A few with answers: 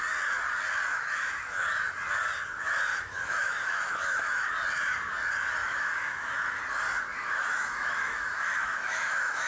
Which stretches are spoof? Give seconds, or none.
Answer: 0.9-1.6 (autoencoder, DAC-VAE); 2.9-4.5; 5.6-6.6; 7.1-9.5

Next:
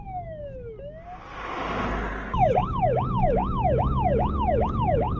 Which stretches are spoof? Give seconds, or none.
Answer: 0.0-0.4 (autoencoder, DAC-VAE); 2.8-5.2

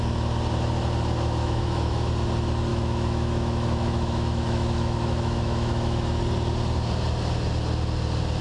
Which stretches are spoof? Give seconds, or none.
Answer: 1.4-2.1 (autoencoder, DAC-VAE); 2.7-6.2

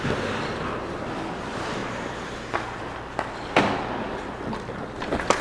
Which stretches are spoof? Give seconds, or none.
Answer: none

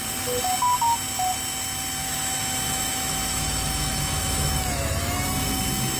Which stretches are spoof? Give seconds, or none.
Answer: 2.0-5.6 (autoencoder, DAC-VAE)

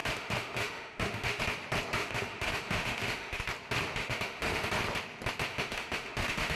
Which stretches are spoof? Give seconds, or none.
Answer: 0.0-1.4 (autoencoder, DAC-VAE); 2.0-3.4; 4.0-4.7; 5.5-6.6

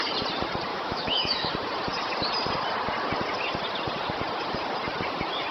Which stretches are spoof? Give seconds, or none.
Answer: 0.7-1.5 (autoencoder, DAC-VAE)